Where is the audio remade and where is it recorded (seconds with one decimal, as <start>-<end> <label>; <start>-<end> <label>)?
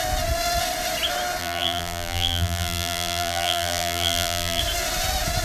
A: 0.0-1.4 recorded; 1.4-4.6 remade; 4.6-5.4 recorded